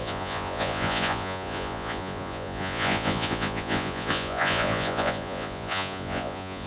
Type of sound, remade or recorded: remade